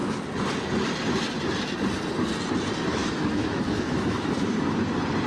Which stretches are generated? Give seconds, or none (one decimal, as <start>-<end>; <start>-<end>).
3.0-4.3